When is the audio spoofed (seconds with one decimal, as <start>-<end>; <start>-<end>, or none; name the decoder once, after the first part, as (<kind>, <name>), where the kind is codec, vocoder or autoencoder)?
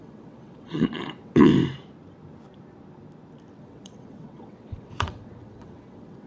0.0-1.5 (vocoder, WaveNeXt); 3.6-6.3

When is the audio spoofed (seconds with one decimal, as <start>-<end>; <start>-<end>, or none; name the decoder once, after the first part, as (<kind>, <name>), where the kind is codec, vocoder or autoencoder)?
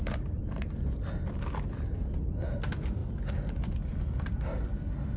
none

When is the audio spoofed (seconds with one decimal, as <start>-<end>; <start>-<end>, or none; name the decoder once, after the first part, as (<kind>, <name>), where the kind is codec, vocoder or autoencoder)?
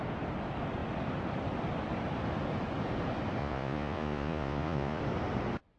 3.4-5.0 (vocoder, Vocos)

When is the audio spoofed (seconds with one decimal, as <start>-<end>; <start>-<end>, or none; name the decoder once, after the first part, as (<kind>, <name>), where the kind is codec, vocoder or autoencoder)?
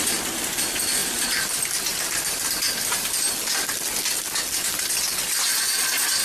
none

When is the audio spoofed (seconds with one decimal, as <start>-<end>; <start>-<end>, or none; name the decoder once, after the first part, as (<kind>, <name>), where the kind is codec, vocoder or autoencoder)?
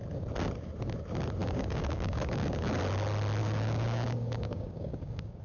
1.4-2.7 (codec, DAC); 3.4-5.4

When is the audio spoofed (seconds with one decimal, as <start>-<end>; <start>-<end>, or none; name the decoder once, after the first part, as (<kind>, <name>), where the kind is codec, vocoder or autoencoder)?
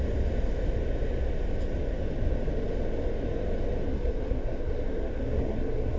3.9-6.0 (codec, SNAC)